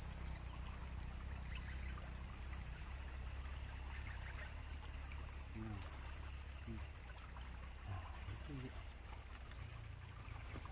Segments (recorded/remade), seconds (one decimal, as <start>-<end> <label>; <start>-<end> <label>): 0.0-10.7 recorded